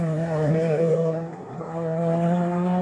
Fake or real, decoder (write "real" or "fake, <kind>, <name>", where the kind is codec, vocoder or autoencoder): fake, codec, SNAC